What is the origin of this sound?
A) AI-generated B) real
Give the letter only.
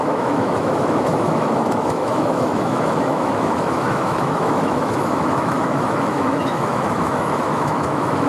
A